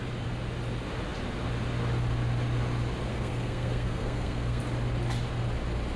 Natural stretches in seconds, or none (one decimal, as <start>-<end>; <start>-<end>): 0.0-3.1; 4.6-6.0